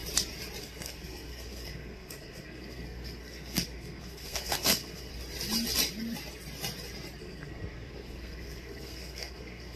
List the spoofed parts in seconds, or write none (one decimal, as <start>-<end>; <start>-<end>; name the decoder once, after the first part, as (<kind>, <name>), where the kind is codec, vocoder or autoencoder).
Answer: 0.6-5.1 (codec, SNAC); 7.2-9.8